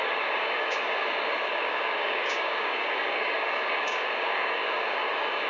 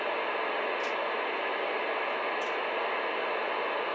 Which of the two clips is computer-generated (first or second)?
first